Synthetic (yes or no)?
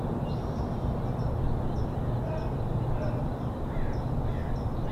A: no